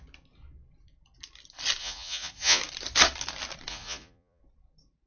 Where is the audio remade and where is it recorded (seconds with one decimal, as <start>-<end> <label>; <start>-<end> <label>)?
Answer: 0.0-1.8 recorded; 1.8-2.6 remade; 2.6-3.7 recorded; 3.7-4.4 remade; 4.4-5.1 recorded